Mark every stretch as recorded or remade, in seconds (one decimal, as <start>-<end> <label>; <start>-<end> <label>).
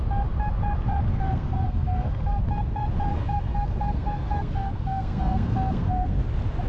0.0-1.1 recorded; 1.1-2.4 remade; 2.4-3.1 recorded; 3.1-6.2 remade; 6.2-6.7 recorded